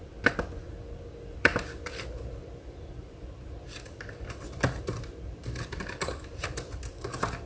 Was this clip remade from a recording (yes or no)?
yes